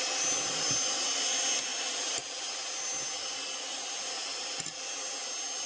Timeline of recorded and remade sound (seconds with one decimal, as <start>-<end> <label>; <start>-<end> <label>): 0.0-5.7 recorded